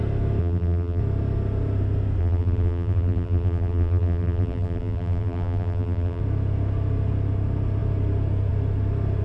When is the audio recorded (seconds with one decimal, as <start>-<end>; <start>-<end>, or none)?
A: 0.0-0.4; 1.0-2.2; 6.2-9.2